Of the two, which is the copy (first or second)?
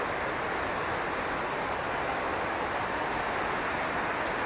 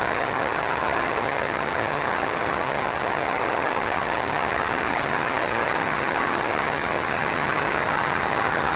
second